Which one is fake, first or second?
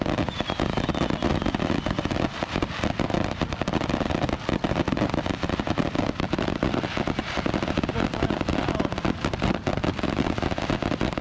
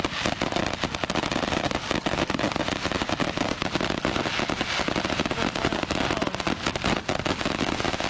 first